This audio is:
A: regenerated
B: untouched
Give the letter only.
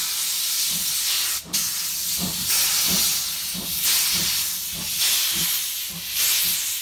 B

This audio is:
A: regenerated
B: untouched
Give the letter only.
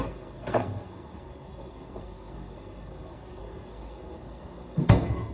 A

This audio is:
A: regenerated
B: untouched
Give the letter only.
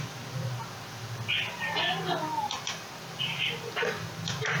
B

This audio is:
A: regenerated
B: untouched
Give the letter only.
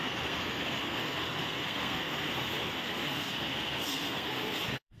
A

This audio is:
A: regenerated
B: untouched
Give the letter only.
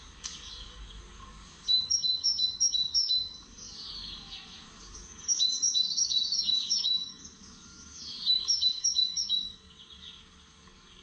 A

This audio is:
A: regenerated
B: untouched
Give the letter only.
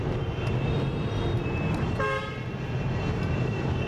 B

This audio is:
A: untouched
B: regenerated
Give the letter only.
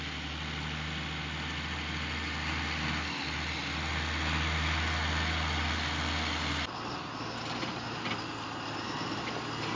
A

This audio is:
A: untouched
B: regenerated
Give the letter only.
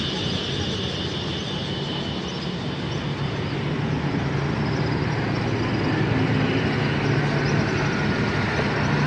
A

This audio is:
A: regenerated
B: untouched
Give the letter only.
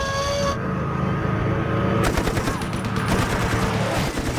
B